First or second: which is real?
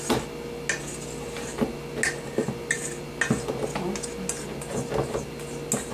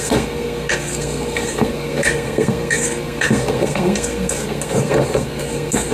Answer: first